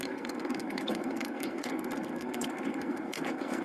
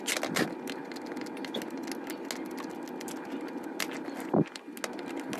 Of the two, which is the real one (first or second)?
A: second